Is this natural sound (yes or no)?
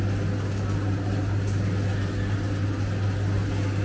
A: yes